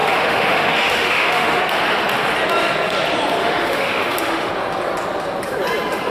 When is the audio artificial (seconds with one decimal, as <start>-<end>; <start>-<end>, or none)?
0.0-1.6; 3.4-4.5